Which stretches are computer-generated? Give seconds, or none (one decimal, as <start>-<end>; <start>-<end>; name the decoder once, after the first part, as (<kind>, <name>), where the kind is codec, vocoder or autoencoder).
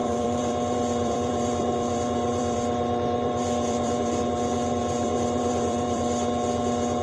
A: 0.0-4.2 (vocoder, BigVGAN v2); 4.8-6.0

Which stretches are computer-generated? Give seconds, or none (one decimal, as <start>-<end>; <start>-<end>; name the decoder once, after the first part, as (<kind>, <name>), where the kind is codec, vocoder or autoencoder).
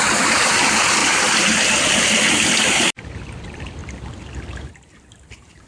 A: 0.0-1.0 (vocoder, BigVGAN v2); 3.4-3.8; 5.1-5.7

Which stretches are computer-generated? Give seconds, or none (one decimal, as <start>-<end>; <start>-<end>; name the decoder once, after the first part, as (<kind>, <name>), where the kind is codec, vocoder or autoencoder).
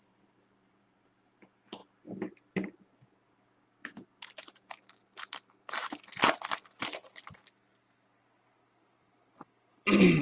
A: 0.0-1.8 (vocoder, BigVGAN v2); 4.5-5.0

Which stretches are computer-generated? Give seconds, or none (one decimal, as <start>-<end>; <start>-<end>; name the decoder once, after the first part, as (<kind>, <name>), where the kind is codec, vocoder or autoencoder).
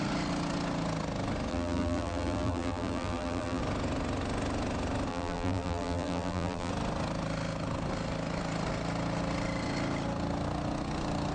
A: 1.5-3.6 (vocoder, BigVGAN v2); 5.1-6.7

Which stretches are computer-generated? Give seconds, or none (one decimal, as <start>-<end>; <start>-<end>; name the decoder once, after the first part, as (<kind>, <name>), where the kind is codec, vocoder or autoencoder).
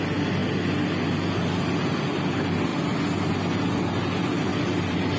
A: 4.5-5.2 (vocoder, BigVGAN v2)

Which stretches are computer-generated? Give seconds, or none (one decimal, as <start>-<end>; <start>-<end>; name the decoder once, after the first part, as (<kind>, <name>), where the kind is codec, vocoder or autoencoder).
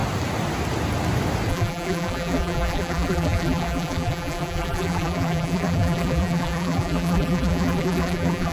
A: 1.5-8.5 (vocoder, BigVGAN v2)